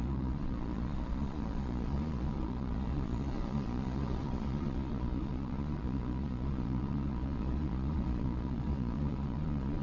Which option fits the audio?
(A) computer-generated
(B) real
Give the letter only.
A